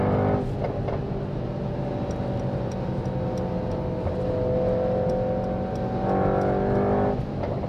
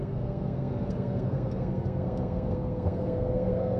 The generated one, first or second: second